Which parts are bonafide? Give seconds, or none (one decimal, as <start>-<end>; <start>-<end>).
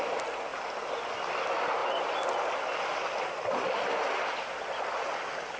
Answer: 0.0-5.6